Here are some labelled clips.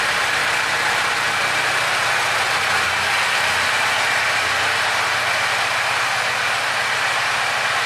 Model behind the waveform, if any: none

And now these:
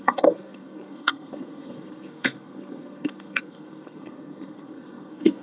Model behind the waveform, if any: codec, SNAC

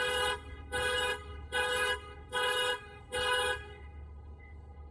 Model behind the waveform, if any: codec, HILCodec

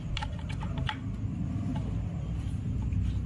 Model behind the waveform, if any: none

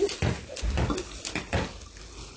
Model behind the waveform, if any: none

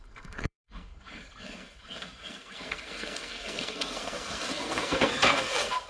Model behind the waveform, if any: codec, SNAC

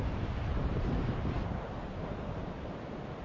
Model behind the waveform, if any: vocoder, BigVGAN v2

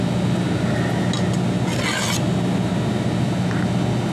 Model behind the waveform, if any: none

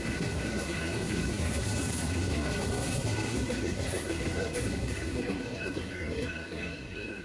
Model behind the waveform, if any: codec, SNAC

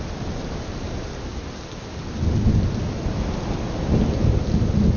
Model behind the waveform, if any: none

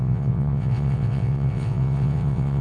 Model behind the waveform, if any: vocoder, WaveNeXt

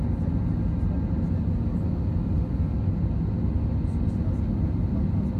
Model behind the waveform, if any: none